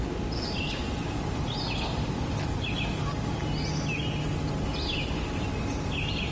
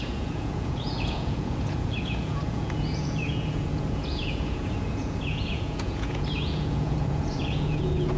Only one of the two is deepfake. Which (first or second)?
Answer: second